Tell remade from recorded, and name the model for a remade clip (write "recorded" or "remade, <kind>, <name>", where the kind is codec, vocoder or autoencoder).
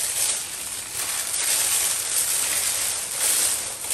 recorded